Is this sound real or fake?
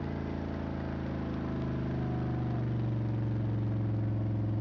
real